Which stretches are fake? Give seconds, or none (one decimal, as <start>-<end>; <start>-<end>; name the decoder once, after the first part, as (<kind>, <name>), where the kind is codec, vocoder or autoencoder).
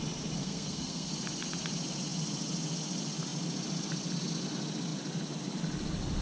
0.4-1.1 (codec, SNAC)